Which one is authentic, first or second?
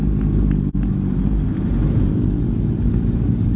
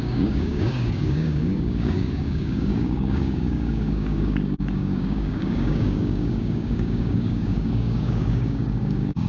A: first